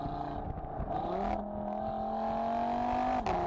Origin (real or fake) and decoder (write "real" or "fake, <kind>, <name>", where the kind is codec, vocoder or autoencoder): real